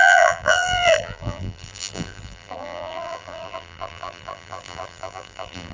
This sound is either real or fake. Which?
fake